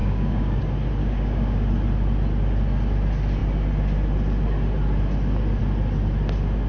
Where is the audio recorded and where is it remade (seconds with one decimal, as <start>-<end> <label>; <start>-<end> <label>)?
0.0-0.6 remade; 0.6-1.0 recorded; 1.0-1.7 remade; 1.7-6.7 recorded